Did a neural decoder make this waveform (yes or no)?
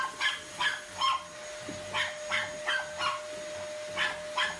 no